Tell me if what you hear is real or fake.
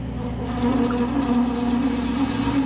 real